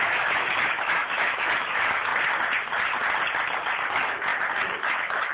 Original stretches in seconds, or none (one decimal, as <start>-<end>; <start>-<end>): 2.1-3.9; 4.3-4.8